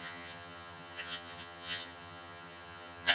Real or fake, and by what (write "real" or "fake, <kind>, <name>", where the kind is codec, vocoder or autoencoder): fake, vocoder, HiFi-GAN